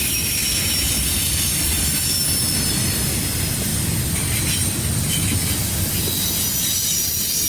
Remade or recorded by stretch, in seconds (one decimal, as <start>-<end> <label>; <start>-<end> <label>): 0.0-7.5 recorded